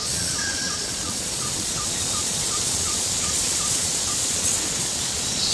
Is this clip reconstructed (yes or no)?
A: yes